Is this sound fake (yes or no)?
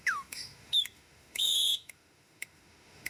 yes